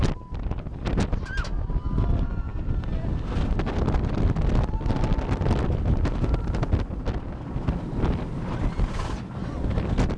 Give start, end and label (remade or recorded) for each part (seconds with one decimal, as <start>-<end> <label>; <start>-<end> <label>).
0.0-10.2 recorded